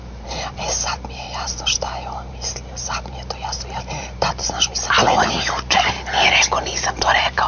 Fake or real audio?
fake